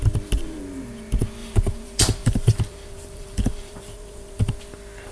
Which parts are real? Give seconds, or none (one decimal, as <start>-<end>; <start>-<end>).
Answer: 0.0-1.4; 4.5-5.1